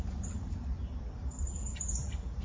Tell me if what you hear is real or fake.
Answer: real